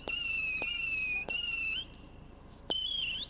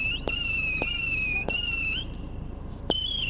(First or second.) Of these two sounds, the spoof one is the second